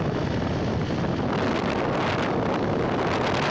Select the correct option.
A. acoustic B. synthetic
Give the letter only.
A